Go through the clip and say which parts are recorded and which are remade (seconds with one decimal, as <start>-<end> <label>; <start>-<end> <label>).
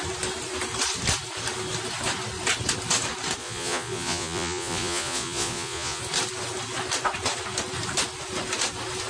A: 0.0-3.4 recorded; 3.4-6.0 remade; 6.0-9.1 recorded